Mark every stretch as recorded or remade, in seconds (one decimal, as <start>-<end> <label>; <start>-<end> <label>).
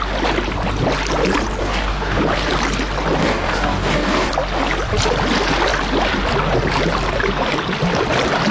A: 0.0-1.6 recorded; 1.6-2.2 remade; 2.2-3.2 recorded; 3.2-4.3 remade; 4.3-8.5 recorded